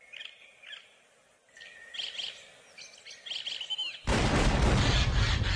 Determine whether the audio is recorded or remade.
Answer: recorded